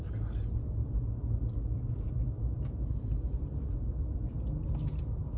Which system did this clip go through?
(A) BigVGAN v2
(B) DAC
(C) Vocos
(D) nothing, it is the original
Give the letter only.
D